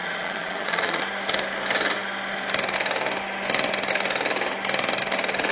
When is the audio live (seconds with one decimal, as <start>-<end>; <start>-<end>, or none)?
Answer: 1.0-5.5